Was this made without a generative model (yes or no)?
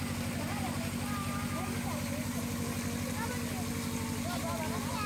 yes